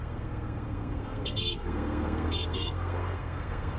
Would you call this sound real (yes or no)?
no